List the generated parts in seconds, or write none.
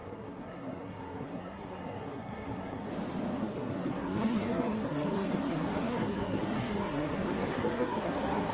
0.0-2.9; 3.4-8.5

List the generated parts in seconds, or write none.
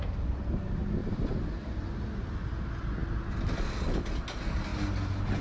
1.0-2.6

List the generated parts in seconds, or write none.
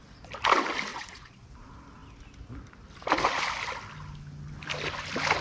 0.9-1.5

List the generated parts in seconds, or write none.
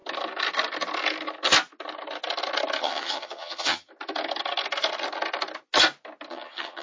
2.8-3.9; 6.3-6.8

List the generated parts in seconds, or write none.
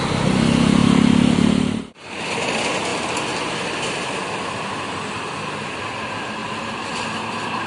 0.8-1.8; 6.4-7.0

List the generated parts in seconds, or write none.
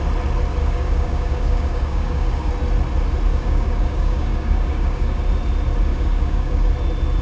0.6-2.5; 3.3-5.2; 5.9-6.7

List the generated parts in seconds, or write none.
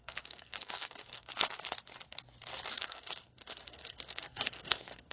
0.0-1.3; 2.8-5.1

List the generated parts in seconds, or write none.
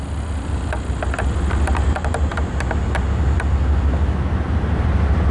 none